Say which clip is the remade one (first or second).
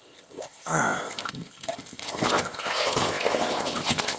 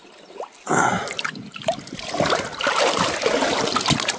first